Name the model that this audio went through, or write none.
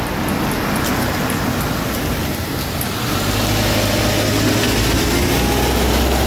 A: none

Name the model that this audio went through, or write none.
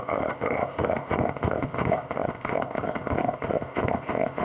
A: codec, ZipCodec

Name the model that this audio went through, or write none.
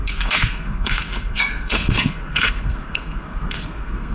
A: codec, SNAC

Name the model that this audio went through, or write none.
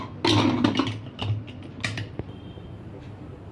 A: none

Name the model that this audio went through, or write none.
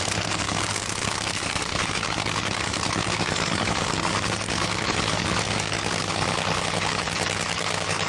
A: codec, DAC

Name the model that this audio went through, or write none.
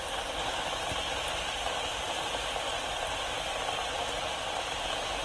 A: none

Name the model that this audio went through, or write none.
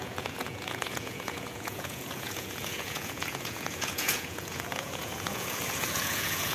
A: vocoder, Vocos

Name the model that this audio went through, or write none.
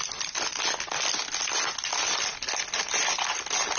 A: none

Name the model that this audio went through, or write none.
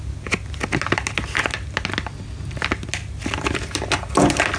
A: none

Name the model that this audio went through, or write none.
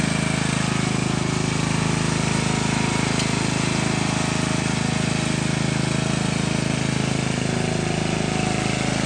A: none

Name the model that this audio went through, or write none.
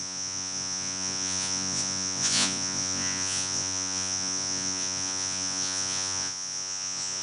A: vocoder, Vocos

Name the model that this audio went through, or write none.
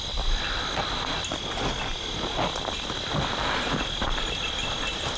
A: none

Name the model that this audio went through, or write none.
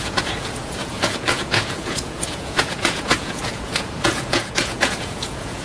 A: vocoder, Vocos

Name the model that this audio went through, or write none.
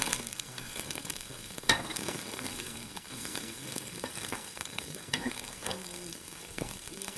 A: codec, SNAC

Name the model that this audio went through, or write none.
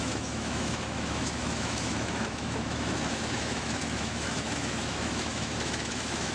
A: autoencoder, DAC-VAE